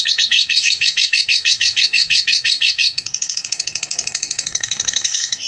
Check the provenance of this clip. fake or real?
fake